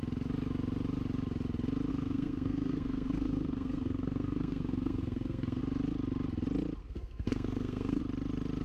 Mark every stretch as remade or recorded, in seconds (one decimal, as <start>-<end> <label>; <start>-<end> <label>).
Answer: 0.0-1.9 recorded; 1.9-5.6 remade; 5.6-6.8 recorded; 6.8-8.0 remade; 8.0-8.6 recorded